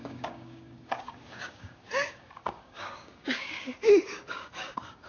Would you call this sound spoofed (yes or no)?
yes